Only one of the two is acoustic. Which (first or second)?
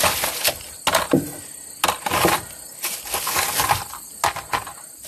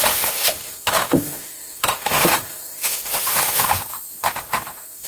first